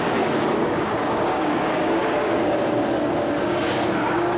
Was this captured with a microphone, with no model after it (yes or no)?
no